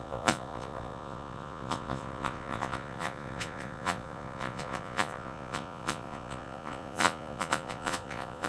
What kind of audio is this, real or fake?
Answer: fake